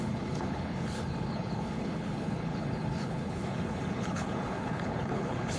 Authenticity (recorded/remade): remade